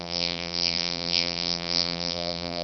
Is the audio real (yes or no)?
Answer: no